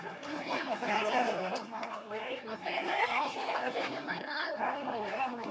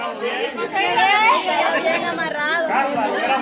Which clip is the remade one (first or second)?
first